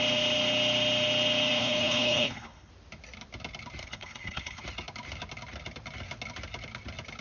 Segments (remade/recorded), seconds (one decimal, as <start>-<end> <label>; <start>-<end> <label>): 0.0-1.6 recorded; 1.6-2.7 remade; 2.7-3.8 recorded; 3.8-4.6 remade; 4.6-7.2 recorded